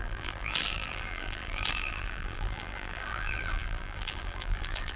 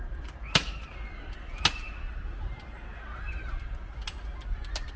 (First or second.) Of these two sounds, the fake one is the first